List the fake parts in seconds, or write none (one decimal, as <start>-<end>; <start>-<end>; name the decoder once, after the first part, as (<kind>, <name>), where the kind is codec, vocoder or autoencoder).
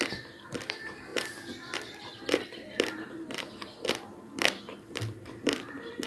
0.0-6.1 (vocoder, BigVGAN v2)